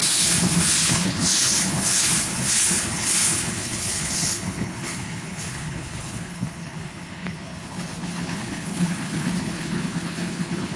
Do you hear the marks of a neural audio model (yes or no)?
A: yes